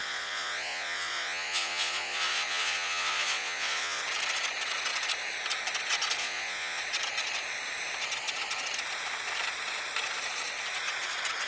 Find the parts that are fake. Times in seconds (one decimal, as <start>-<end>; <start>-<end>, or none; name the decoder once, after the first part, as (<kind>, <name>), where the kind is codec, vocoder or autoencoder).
0.0-4.0 (vocoder, Vocos); 6.2-6.8